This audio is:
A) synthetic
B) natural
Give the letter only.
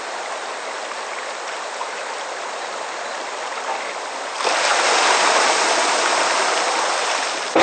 B